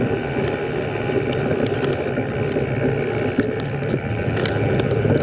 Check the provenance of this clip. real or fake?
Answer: real